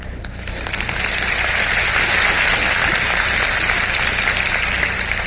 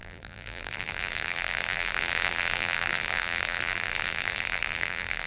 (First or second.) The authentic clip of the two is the first